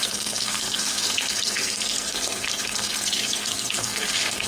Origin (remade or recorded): remade